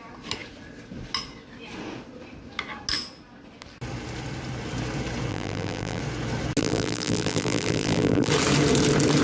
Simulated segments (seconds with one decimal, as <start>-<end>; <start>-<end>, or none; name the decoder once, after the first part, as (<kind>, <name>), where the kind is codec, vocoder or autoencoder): 5.3-6.0 (vocoder, BigVGAN v2); 6.6-8.3